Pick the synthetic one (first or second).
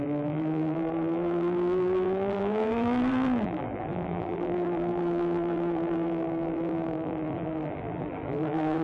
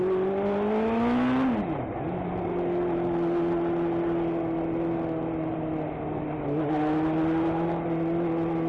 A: first